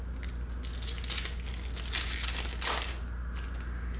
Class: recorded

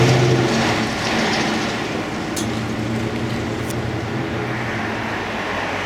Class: recorded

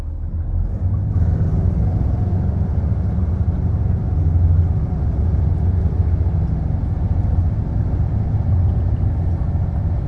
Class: recorded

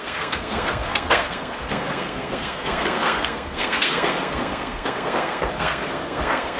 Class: remade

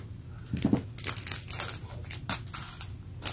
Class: recorded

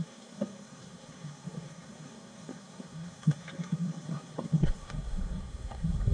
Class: remade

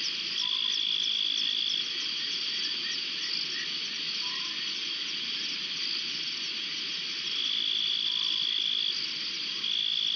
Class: recorded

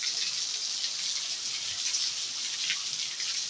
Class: recorded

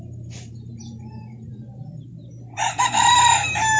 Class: remade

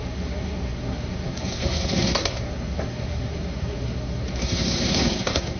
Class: remade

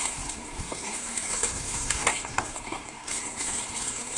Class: remade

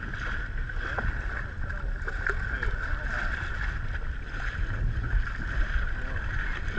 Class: recorded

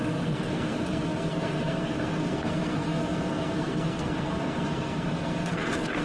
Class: remade